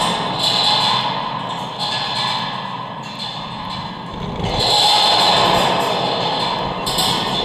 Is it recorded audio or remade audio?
recorded